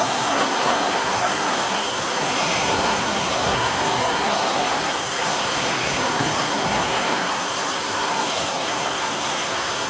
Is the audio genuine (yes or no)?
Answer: no